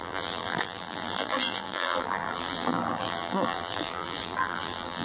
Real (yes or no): no